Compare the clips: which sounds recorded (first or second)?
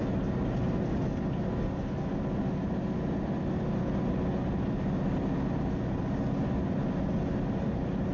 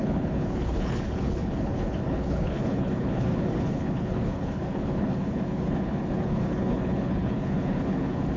first